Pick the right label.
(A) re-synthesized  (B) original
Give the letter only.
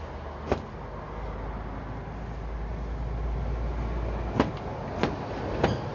B